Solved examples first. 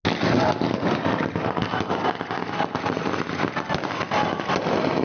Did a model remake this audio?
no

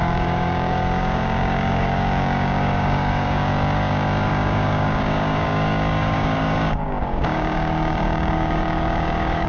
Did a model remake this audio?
yes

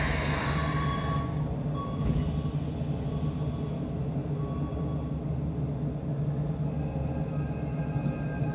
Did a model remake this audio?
no